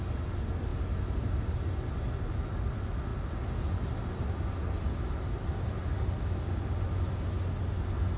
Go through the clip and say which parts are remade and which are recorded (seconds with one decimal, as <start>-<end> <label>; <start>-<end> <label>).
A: 0.0-8.2 recorded